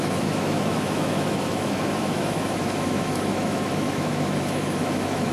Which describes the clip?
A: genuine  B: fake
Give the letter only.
B